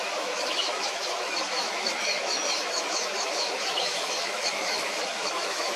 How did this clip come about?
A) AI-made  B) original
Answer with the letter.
A